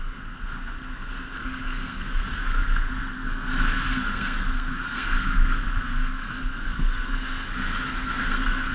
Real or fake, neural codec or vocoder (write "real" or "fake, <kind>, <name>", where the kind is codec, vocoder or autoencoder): fake, codec, SNAC